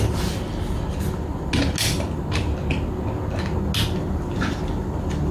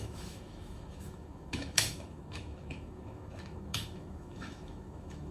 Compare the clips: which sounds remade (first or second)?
second